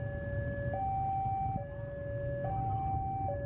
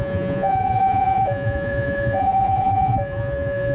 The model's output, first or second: second